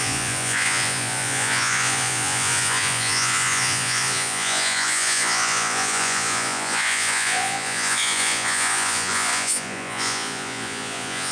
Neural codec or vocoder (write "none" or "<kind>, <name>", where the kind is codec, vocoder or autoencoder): vocoder, Vocos